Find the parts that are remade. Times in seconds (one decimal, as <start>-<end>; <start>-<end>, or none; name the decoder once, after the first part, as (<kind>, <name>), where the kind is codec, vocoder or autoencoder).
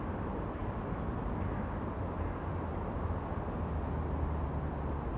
none